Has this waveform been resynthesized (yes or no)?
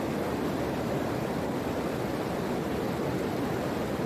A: no